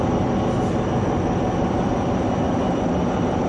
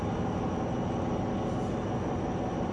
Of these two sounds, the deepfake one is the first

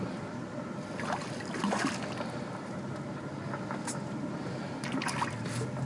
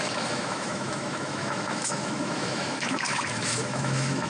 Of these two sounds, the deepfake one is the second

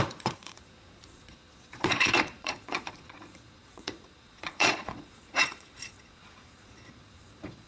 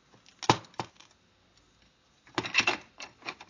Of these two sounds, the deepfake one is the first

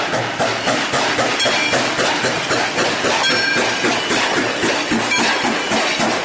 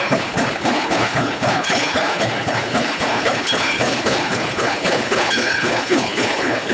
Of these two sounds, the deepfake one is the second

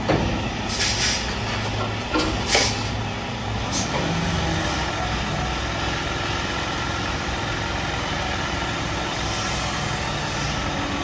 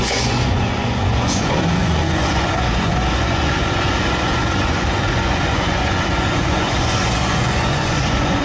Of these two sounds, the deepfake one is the second